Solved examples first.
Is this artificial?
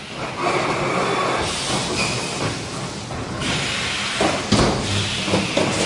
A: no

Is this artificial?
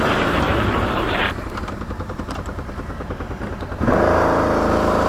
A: yes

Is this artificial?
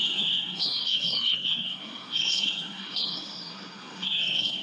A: yes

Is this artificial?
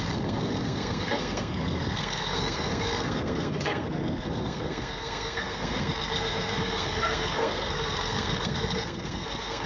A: yes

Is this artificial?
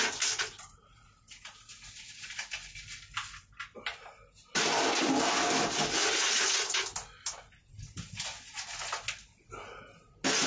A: no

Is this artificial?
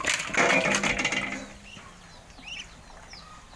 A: no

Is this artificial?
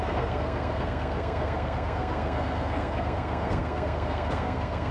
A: yes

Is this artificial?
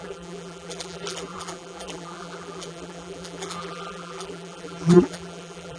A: yes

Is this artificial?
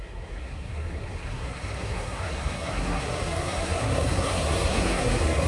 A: yes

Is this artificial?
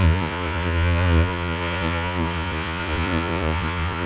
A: yes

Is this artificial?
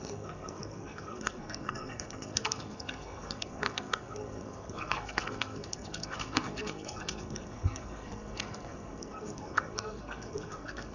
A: yes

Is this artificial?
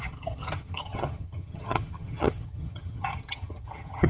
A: yes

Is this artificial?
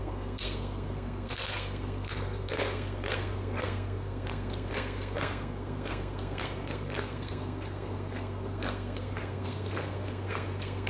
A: yes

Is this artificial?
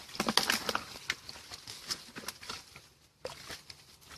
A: no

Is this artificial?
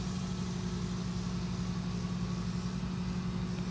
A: no